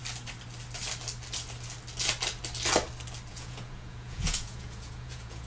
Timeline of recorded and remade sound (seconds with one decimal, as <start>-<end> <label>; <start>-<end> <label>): 0.0-3.3 recorded; 3.3-5.5 remade